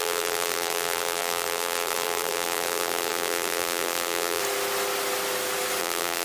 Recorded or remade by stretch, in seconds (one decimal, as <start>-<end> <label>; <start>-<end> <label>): 0.0-4.4 remade; 4.4-5.8 recorded; 5.8-6.2 remade